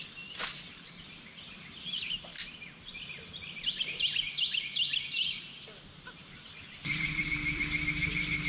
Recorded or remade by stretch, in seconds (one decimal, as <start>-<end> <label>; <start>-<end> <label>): 0.0-2.3 recorded; 2.3-3.8 remade; 3.8-6.8 recorded; 6.8-7.6 remade; 7.6-8.5 recorded

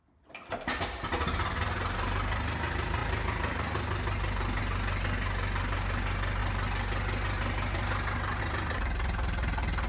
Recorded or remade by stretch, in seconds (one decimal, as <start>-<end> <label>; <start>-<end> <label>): 0.0-9.9 recorded